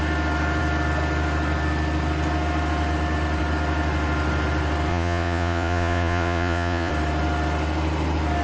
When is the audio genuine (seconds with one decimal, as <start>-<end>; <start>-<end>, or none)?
0.0-4.9; 6.9-8.4